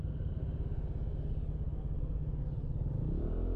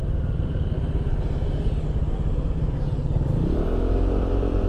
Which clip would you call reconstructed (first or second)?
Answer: second